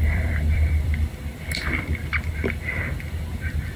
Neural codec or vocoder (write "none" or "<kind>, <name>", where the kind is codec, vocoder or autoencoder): vocoder, BigVGAN v2